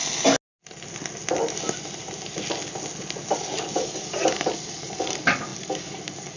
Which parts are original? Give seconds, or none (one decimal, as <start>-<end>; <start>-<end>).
0.0-3.8